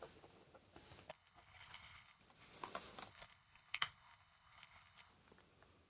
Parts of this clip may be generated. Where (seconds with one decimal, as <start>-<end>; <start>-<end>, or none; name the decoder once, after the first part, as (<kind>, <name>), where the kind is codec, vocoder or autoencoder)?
1.1-2.2 (codec, HILCodec); 3.1-5.1